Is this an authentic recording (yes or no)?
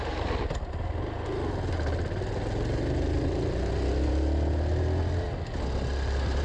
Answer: yes